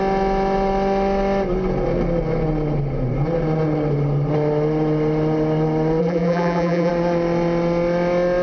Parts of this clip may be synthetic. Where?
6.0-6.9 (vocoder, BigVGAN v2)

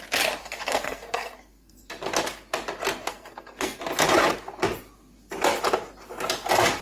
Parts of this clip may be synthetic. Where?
0.4-1.9 (codec, SNAC); 3.1-3.8

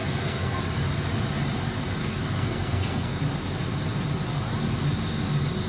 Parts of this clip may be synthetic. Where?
0.0-0.6 (codec, SNAC); 2.0-3.2

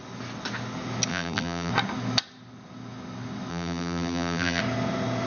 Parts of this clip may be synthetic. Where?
1.1-1.7 (vocoder, BigVGAN v2); 3.5-4.6

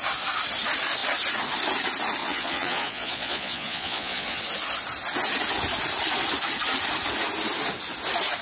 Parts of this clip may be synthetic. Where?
2.2-4.4 (vocoder, Vocos)

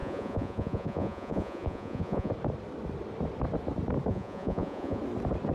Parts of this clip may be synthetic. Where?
0.0-2.3 (vocoder, Vocos); 4.1-5.0

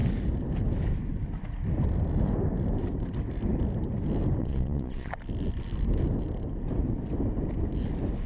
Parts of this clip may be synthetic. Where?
4.4-5.2 (vocoder, Vocos)